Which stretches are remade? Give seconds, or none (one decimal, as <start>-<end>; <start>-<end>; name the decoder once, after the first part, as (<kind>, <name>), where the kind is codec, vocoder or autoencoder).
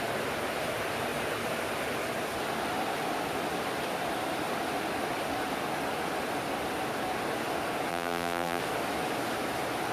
7.9-8.6 (vocoder, BigVGAN v2)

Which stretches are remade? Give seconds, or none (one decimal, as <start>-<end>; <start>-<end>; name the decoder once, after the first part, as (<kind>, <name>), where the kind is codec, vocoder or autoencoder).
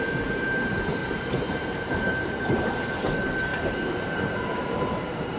1.0-2.9 (vocoder, BigVGAN v2); 3.5-5.4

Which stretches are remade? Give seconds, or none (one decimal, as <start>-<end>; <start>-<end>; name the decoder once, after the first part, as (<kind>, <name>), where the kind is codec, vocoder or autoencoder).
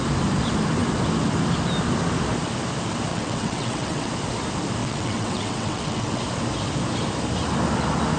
3.1-4.1 (vocoder, WaveNeXt); 4.8-6.2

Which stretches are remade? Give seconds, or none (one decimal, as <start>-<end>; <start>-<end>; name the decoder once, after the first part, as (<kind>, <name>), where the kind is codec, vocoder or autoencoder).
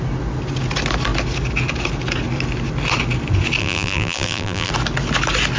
3.6-4.7 (vocoder, BigVGAN v2)